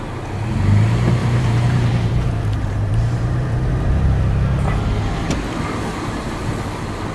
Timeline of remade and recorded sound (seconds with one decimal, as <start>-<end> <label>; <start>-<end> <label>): 0.0-1.2 recorded; 1.2-4.2 remade; 4.2-7.1 recorded